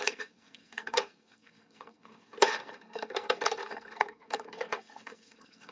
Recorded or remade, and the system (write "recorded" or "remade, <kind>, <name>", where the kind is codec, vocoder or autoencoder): remade, codec, SNAC